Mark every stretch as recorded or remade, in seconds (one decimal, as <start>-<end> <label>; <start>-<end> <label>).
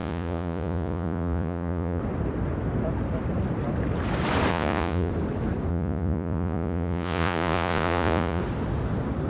0.0-2.0 remade; 2.0-4.5 recorded; 4.5-5.1 remade; 5.1-5.7 recorded; 5.7-8.4 remade; 8.4-9.3 recorded